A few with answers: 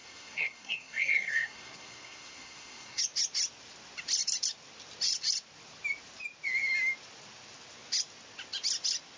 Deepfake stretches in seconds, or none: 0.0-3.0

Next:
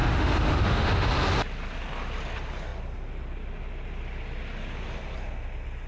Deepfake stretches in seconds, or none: 0.0-1.1

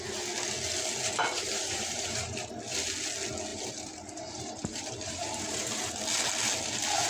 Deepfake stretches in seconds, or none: 1.2-2.5; 3.5-5.9

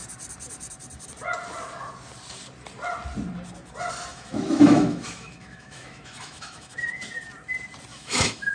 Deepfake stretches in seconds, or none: 4.1-7.0; 7.9-8.5

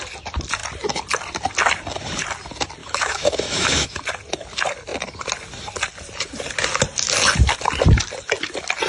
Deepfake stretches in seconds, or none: 2.8-4.0

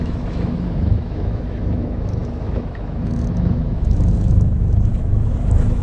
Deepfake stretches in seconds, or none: 0.0-5.8

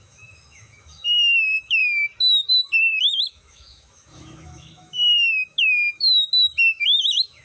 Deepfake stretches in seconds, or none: 0.0-1.8; 2.5-7.4

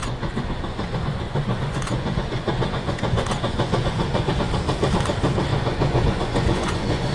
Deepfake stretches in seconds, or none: 0.0-4.3; 5.5-7.1